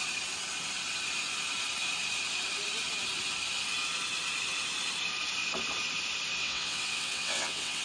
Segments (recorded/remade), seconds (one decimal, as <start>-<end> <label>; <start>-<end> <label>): 0.0-6.4 recorded; 6.4-7.8 remade